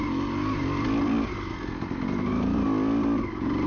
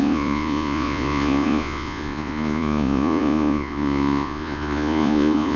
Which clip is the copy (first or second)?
second